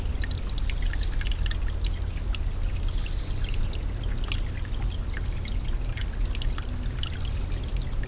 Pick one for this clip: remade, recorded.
recorded